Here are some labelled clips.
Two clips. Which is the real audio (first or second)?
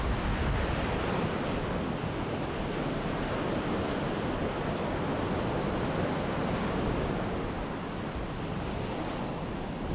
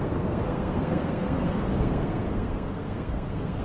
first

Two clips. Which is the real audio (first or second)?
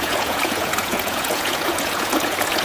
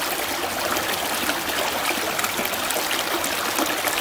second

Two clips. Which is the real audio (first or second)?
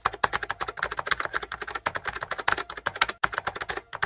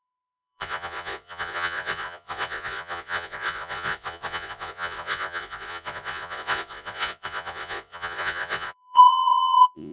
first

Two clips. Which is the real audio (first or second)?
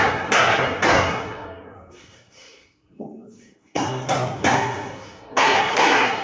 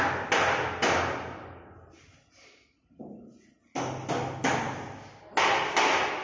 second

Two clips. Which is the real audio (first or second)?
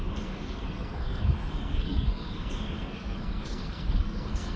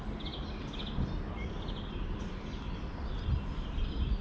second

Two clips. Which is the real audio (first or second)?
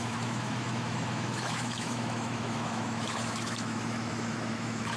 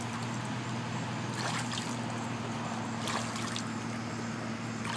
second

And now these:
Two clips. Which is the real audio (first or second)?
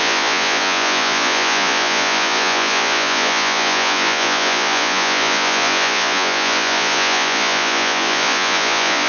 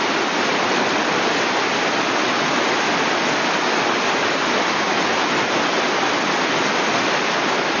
second